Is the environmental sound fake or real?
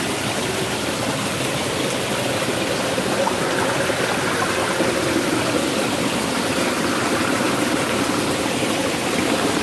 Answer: real